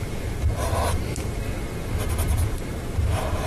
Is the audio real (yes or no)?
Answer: no